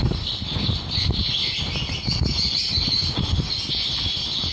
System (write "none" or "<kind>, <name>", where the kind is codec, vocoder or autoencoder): none